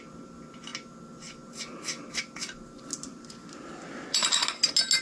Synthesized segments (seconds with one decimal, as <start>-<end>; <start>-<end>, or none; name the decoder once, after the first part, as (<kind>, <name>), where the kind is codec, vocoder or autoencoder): none